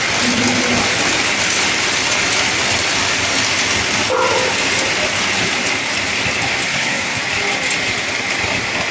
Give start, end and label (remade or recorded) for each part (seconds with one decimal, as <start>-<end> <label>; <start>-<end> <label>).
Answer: 0.0-6.7 recorded; 6.7-7.2 remade; 7.2-8.9 recorded